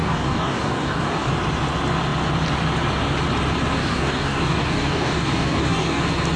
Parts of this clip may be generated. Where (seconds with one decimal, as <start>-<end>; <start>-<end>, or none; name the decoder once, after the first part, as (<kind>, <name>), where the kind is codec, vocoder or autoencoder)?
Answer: 0.0-1.3 (codec, DAC); 3.8-6.0